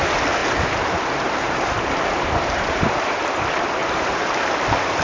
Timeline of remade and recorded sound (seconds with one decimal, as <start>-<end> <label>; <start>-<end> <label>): 0.0-0.4 recorded; 0.4-3.4 remade; 3.4-3.8 recorded; 3.8-4.5 remade; 4.5-5.0 recorded